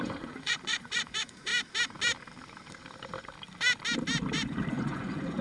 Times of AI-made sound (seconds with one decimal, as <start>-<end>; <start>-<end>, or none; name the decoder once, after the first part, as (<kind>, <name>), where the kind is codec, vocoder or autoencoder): 0.0-1.5 (vocoder, Vocos); 4.7-5.4